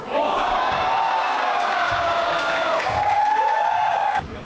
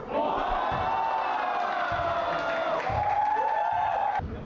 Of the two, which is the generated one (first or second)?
first